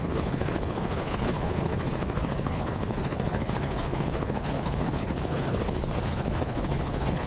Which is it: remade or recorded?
remade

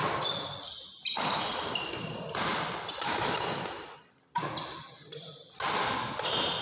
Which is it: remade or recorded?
remade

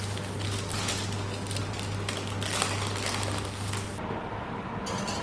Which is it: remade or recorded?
recorded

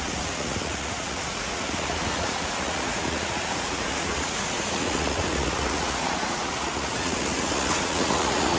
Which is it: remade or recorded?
remade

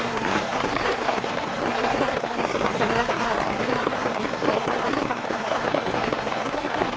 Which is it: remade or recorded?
remade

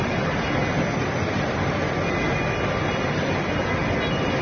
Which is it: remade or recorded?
recorded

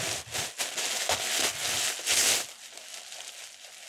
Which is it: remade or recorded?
recorded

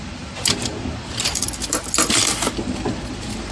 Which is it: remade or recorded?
recorded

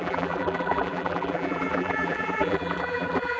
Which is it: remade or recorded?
remade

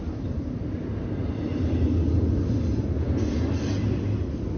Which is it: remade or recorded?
recorded